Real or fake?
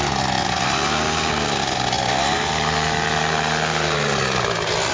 real